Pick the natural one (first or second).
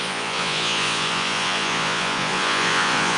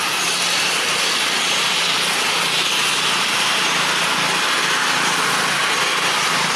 second